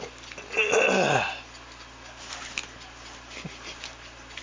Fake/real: real